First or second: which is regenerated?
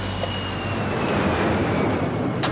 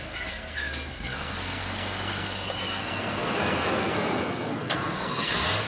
second